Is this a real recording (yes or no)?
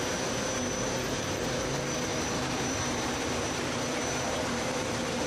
no